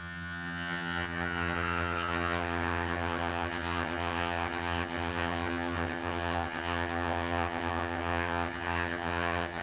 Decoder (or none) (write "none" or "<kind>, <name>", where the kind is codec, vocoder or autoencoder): vocoder, HiFi-GAN